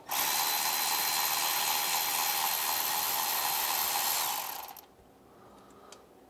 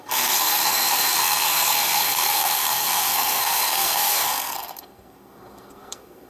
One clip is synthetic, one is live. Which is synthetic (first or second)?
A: second